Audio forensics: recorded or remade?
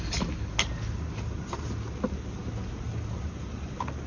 recorded